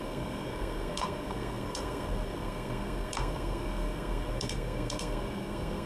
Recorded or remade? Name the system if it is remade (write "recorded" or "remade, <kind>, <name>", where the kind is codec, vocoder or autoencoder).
remade, codec, SNAC